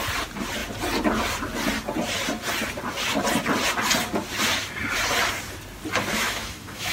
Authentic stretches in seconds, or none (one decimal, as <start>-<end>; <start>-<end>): 0.0-6.1